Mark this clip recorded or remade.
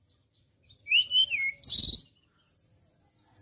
recorded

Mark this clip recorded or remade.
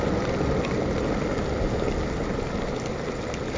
recorded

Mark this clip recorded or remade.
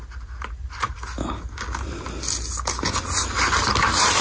recorded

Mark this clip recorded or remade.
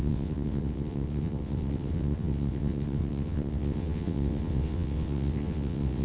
remade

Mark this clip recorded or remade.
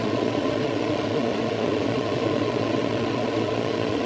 remade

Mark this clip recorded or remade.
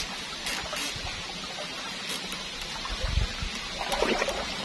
recorded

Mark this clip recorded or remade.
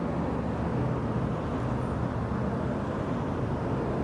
recorded